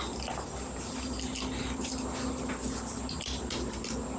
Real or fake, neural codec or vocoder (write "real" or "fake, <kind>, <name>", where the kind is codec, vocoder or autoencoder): real